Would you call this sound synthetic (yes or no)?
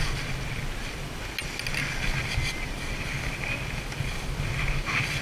no